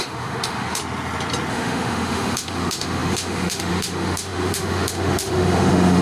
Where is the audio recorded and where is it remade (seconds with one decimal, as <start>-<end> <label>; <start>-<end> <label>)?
0.0-0.8 remade; 0.8-1.5 recorded; 1.5-6.0 remade